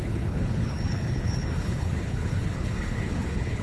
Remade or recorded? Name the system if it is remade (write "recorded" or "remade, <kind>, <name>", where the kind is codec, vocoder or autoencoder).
remade, codec, HILCodec